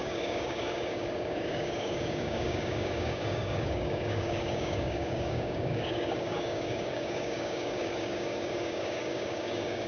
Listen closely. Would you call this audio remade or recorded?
remade